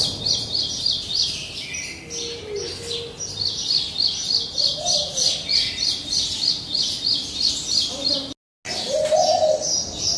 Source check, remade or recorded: recorded